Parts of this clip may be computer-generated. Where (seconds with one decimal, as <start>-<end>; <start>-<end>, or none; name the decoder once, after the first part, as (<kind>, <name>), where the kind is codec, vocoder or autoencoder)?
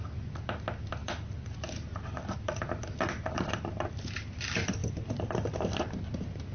1.0-3.6 (vocoder, BigVGAN v2); 4.8-5.5